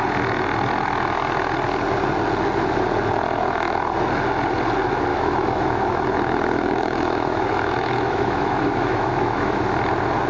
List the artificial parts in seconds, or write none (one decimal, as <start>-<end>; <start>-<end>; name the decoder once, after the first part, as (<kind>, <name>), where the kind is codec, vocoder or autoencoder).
5.1-9.6 (autoencoder, DAC-VAE)